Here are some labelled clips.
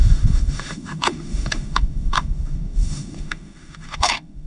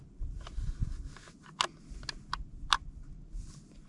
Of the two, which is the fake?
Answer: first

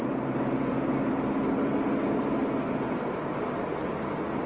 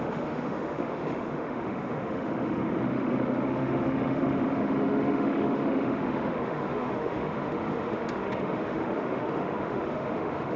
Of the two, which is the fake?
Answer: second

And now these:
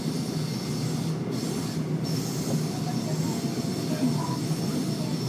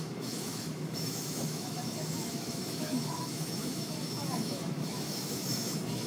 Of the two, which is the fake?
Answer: second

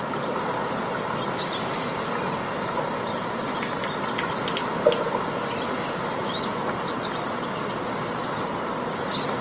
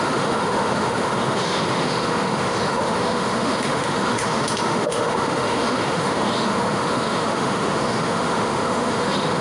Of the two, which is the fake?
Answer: second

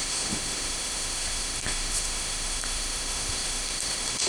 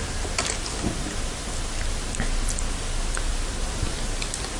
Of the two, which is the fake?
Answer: first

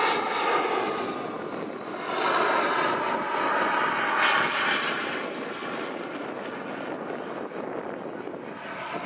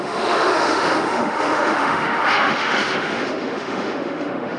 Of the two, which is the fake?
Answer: second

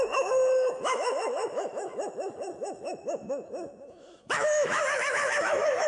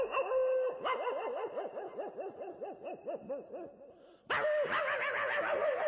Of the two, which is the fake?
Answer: first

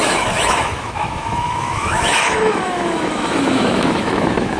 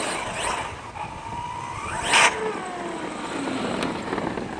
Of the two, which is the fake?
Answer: first